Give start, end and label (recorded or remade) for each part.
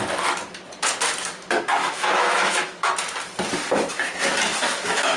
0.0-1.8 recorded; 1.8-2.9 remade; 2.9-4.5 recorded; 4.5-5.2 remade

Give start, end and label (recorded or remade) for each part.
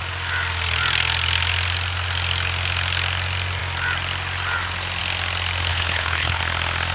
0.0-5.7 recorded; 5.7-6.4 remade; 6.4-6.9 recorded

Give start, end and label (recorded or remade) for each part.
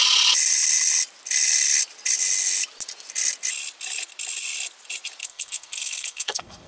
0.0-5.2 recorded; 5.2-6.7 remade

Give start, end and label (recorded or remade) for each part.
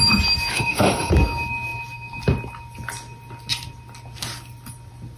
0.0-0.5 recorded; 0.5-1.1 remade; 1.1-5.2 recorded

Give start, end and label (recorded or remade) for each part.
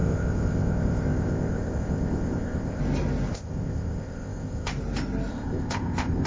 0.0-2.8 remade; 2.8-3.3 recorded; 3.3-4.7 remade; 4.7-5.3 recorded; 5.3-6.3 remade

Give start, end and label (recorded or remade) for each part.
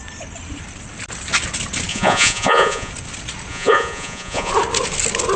0.0-1.9 recorded; 1.9-2.9 remade; 2.9-3.5 recorded; 3.5-4.5 remade; 4.5-5.4 recorded